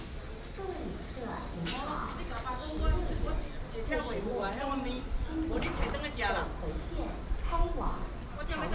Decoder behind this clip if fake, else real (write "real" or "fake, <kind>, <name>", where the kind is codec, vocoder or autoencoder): real